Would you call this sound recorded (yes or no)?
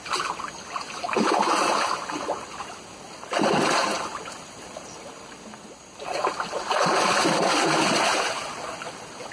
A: yes